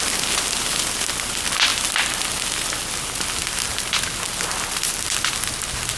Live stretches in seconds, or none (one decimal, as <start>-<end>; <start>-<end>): 0.0-6.0